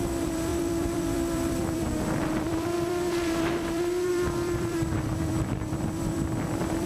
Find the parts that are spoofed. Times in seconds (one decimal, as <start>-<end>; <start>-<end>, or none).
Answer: 0.0-6.9